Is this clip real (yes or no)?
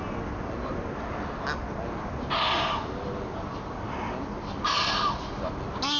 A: yes